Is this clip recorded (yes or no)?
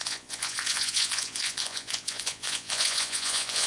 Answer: no